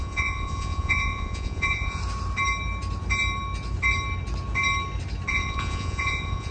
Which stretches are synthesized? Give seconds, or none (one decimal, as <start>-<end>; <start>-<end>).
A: 0.0-2.0; 5.3-6.5